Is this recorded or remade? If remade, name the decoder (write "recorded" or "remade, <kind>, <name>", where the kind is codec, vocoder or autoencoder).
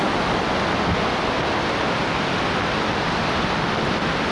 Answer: recorded